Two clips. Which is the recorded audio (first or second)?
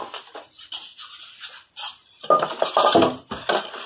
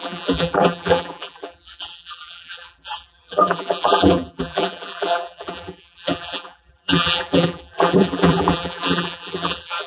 first